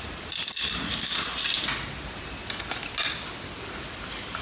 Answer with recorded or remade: recorded